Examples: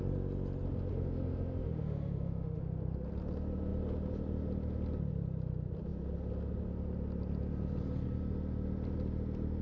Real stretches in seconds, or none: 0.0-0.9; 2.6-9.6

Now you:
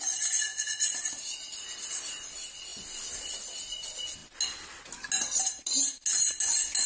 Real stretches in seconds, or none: 0.0-6.9

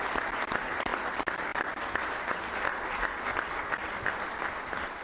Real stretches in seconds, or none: 0.0-5.0

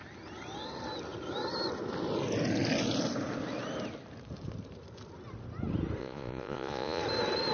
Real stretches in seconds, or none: 0.0-6.0; 7.0-7.5